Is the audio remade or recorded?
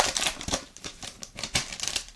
remade